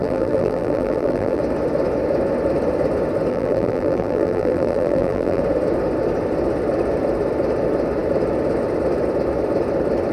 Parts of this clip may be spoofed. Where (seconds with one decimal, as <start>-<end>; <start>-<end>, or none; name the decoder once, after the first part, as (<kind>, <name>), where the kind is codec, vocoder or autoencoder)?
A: 0.0-1.4 (vocoder, BigVGAN v2); 3.3-5.4